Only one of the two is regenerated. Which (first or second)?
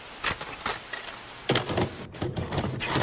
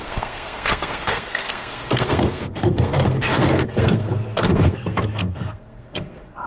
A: second